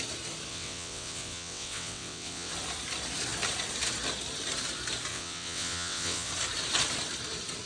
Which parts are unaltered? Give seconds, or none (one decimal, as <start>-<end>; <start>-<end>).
0.0-0.5; 2.5-5.1; 6.3-7.7